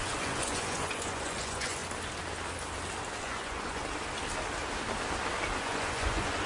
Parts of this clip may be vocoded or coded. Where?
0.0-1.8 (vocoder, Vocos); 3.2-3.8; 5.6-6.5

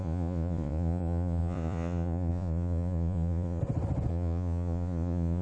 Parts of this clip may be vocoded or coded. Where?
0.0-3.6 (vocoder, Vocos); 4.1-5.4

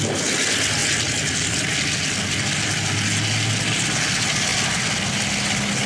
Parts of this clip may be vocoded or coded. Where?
none

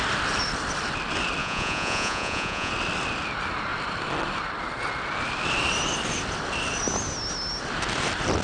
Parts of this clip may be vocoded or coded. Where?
1.4-2.7 (vocoder, Vocos)

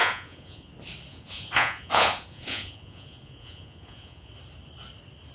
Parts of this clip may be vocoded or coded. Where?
0.0-0.7 (vocoder, Vocos); 1.1-4.3

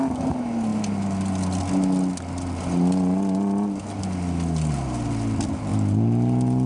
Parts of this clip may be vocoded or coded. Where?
none